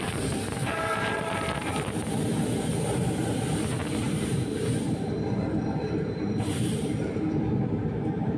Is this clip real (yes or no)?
no